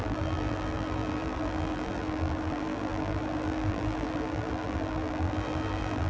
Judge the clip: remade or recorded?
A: remade